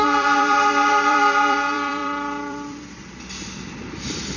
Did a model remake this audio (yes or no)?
yes